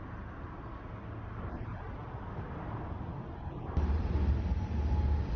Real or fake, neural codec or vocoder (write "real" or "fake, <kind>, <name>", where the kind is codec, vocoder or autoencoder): real